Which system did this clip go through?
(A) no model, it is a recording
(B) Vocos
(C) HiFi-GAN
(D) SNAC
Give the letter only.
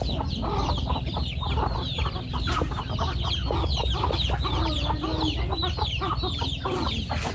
A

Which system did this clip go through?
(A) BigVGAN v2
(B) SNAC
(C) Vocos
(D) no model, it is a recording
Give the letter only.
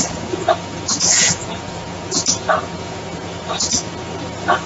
C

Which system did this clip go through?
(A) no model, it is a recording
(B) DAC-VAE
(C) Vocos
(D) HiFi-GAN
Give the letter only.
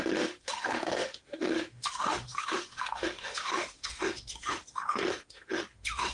B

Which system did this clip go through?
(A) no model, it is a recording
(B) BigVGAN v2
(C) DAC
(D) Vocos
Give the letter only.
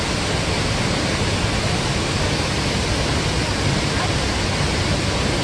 A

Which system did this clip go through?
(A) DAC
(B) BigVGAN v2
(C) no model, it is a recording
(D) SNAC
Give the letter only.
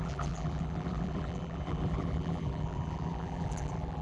B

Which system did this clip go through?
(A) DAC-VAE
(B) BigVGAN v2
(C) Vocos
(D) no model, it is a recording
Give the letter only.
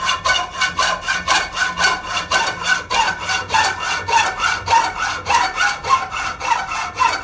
D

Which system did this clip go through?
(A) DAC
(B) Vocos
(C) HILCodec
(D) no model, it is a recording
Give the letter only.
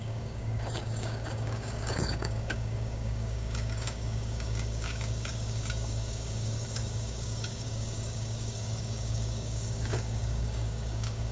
A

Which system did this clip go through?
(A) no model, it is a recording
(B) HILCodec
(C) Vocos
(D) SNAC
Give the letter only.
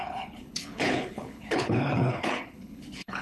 B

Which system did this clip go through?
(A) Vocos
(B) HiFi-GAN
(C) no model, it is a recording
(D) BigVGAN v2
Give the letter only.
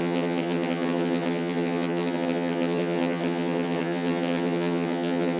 B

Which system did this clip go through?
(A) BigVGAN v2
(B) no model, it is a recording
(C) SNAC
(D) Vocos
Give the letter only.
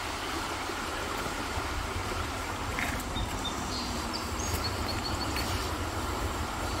A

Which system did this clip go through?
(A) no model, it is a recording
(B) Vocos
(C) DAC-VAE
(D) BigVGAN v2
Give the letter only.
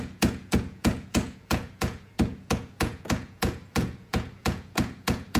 B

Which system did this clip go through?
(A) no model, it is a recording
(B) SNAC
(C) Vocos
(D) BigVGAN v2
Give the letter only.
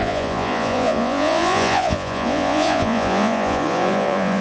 C